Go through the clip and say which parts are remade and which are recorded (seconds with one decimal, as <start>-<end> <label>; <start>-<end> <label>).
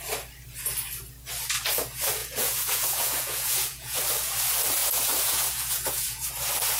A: 0.0-2.2 recorded; 2.2-4.0 remade; 4.0-4.8 recorded; 4.8-6.3 remade; 6.3-6.8 recorded